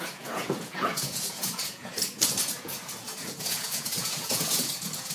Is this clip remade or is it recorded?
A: remade